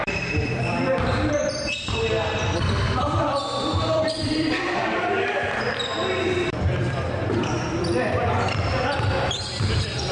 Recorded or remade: remade